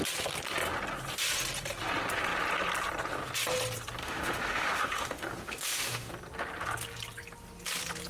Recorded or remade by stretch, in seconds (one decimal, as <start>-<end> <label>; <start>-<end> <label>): 0.0-4.0 recorded; 4.0-6.1 remade; 6.1-8.1 recorded